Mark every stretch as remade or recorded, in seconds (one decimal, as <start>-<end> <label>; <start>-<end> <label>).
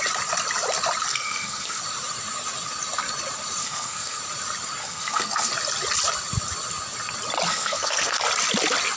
0.0-1.1 recorded; 1.1-1.8 remade; 1.8-3.6 recorded; 3.6-4.2 remade; 4.2-4.8 recorded; 4.8-5.5 remade; 5.5-7.5 recorded; 7.5-8.2 remade; 8.2-9.0 recorded